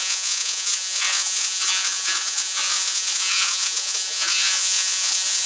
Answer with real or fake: fake